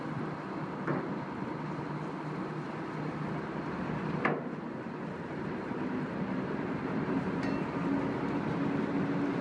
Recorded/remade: recorded